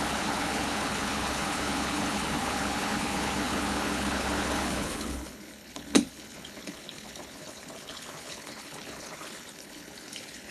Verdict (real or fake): fake